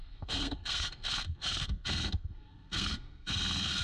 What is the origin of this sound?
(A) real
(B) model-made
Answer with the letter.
B